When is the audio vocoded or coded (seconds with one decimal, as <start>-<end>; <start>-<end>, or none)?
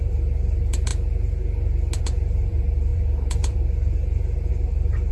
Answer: 0.0-0.9; 2.0-5.1